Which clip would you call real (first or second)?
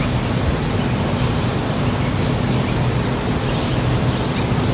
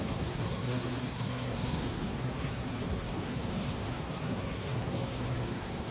first